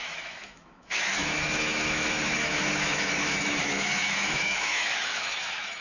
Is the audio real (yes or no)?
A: no